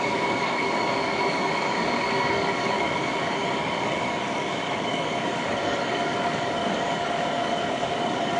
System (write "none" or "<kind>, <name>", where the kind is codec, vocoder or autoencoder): codec, DAC